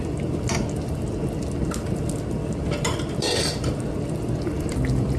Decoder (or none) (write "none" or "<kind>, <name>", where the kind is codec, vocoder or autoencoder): none